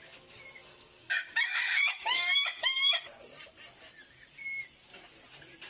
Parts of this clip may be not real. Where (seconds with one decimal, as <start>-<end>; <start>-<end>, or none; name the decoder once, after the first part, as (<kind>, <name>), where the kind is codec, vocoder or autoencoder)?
0.6-3.0 (autoencoder, DAC-VAE)